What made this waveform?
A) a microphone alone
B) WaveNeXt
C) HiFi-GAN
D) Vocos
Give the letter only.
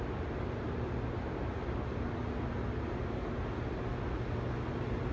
A